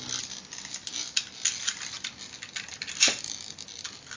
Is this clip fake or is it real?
real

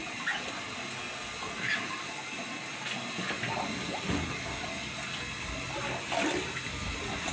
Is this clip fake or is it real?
real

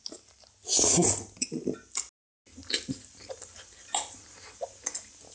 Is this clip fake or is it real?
real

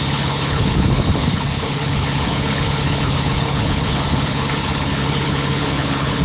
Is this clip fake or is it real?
fake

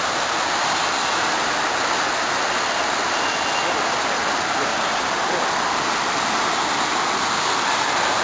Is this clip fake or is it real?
real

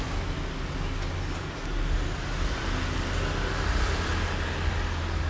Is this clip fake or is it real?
real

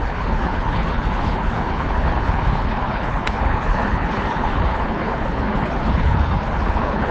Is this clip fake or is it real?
fake